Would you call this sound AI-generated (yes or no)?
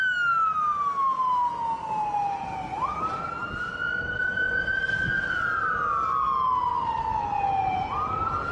no